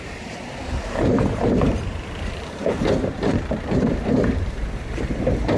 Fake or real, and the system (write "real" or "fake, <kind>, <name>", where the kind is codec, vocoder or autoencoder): fake, vocoder, BigVGAN v2